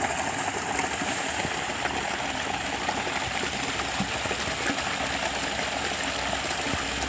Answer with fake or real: real